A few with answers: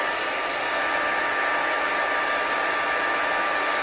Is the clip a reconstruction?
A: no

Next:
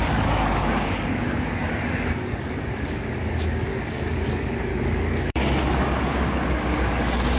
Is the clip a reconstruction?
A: yes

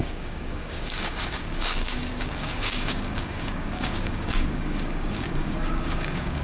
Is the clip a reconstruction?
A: yes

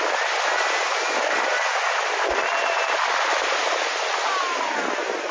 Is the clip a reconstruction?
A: no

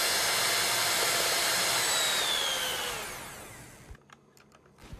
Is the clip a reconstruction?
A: no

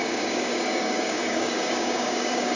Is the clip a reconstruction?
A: yes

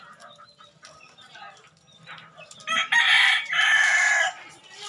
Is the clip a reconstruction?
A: no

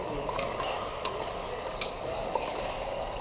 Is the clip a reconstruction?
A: yes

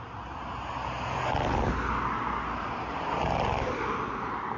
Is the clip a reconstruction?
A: no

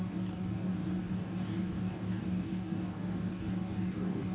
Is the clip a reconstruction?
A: yes